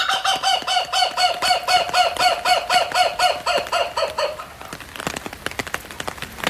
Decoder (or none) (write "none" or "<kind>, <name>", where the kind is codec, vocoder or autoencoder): none